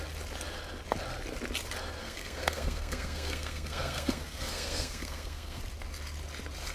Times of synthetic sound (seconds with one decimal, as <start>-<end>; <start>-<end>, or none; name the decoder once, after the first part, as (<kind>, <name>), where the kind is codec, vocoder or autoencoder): 2.0-5.6 (codec, SNAC)